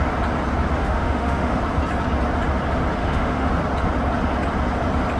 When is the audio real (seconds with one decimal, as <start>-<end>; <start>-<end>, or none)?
0.0-0.8; 1.6-3.0; 3.5-5.2